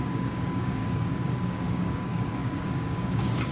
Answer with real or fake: fake